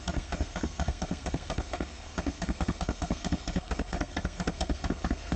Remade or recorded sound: remade